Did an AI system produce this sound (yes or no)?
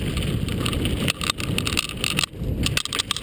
no